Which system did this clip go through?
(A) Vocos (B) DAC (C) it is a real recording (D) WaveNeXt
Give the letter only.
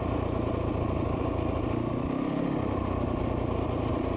C